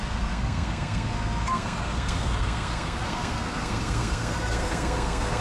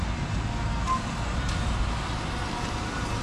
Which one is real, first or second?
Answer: second